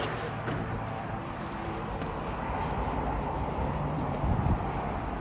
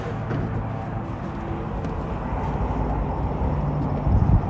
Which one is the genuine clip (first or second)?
second